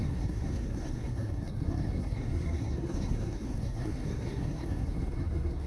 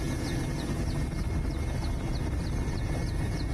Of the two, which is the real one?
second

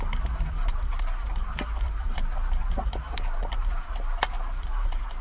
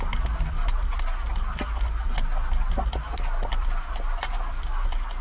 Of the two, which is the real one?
second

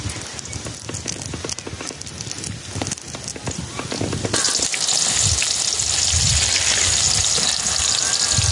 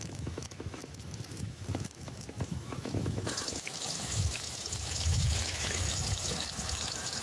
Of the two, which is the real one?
first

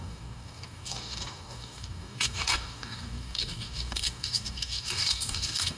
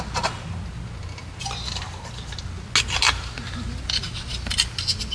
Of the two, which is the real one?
second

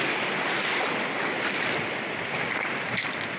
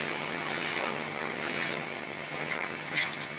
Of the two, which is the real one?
first